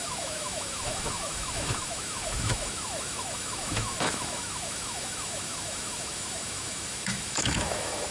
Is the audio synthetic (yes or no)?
yes